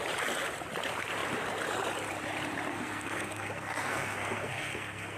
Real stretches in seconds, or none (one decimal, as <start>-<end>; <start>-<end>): 0.0-2.7